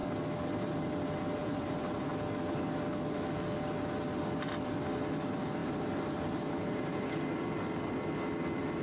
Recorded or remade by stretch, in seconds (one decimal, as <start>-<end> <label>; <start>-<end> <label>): 0.0-1.4 recorded; 1.4-2.1 remade; 2.1-5.6 recorded; 5.6-7.1 remade; 7.1-8.8 recorded